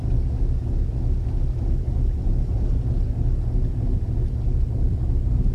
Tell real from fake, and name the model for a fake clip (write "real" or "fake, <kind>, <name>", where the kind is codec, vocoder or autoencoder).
real